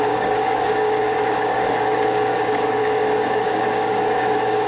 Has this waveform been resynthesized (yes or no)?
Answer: yes